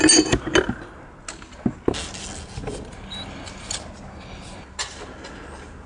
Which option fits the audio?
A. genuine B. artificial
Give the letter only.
A